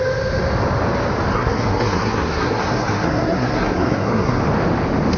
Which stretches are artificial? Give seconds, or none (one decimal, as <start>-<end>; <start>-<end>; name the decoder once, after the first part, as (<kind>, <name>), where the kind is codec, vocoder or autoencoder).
1.3-4.4 (codec, SNAC)